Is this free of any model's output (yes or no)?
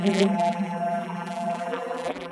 no